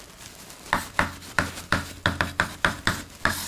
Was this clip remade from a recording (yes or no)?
no